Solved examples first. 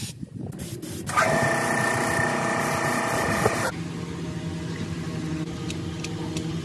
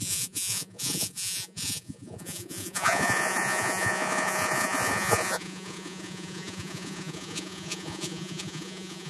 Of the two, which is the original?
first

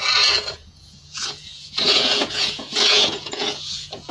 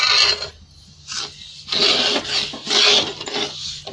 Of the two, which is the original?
second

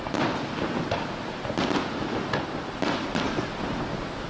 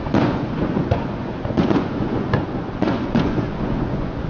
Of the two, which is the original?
first